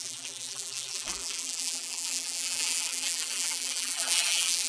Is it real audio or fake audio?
fake